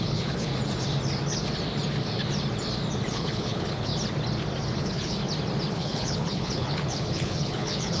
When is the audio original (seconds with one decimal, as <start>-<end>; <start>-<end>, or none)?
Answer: 0.5-3.1; 3.9-4.8; 5.2-5.7